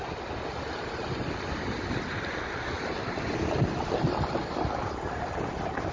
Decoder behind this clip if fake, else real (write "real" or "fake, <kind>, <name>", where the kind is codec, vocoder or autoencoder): real